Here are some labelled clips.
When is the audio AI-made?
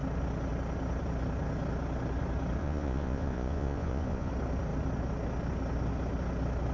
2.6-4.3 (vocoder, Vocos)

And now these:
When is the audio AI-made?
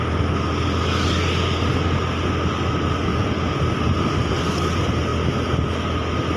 3.1-3.6 (vocoder, Vocos)